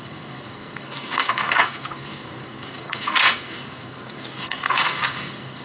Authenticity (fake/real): fake